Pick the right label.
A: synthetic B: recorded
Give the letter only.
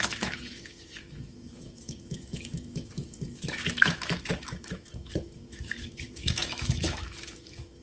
A